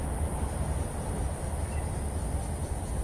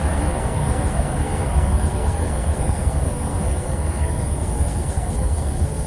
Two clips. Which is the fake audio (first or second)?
second